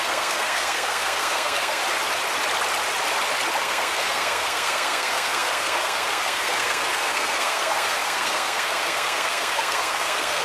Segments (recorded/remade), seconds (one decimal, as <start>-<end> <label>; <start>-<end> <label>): 0.0-1.8 remade; 1.8-3.6 recorded; 3.6-10.4 remade